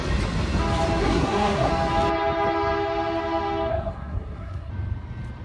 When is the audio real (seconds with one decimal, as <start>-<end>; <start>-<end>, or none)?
0.0-1.0; 1.7-3.7; 4.7-5.4